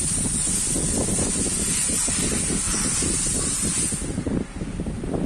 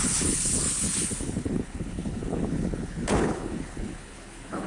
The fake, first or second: second